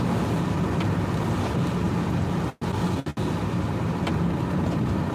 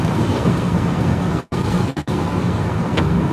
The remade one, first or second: second